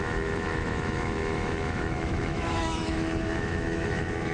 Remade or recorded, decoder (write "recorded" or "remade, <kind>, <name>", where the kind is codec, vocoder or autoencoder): remade, autoencoder, DAC-VAE